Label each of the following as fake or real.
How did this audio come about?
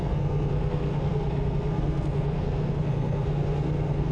fake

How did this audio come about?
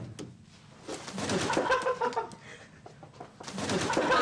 real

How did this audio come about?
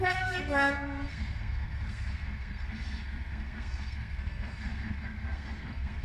fake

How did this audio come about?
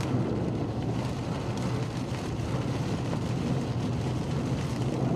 real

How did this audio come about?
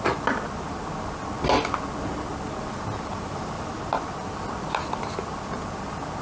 real